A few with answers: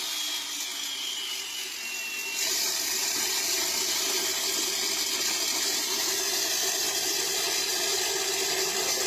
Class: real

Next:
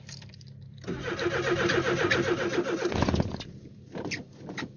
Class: fake